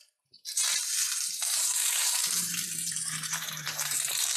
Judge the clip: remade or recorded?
remade